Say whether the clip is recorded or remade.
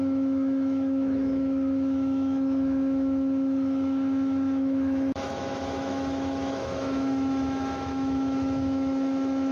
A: remade